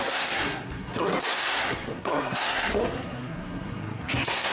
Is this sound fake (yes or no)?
yes